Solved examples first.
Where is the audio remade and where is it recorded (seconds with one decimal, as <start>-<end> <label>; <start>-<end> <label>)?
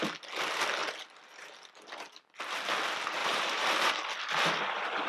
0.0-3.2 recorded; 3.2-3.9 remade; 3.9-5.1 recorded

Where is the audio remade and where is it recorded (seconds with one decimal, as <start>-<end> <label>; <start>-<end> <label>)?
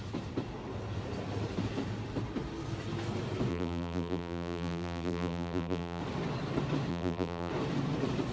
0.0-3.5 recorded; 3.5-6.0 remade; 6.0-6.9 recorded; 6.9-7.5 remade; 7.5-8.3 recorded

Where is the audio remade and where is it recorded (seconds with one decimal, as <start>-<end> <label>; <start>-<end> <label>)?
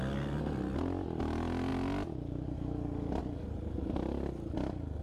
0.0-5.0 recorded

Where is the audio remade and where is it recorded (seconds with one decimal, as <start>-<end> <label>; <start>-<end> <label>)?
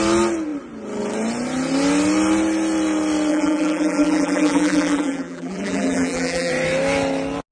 0.0-3.3 recorded; 3.3-6.5 remade; 6.5-7.5 recorded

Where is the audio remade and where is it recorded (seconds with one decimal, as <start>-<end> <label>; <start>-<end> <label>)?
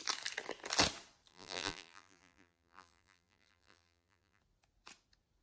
0.0-1.3 recorded; 1.3-4.4 remade; 4.4-5.4 recorded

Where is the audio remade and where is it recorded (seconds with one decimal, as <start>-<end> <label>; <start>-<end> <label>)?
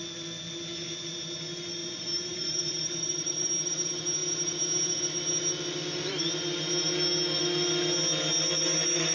0.0-1.8 recorded; 1.8-3.5 remade; 3.5-9.1 recorded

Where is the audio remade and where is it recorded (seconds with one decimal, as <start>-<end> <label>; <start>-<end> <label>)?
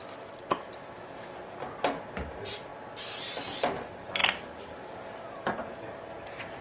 0.0-6.6 recorded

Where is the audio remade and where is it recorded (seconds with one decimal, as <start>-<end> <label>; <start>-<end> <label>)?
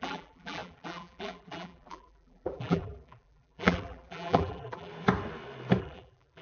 0.0-4.9 remade; 4.9-5.8 recorded; 5.8-6.4 remade